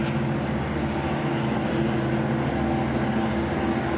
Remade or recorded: recorded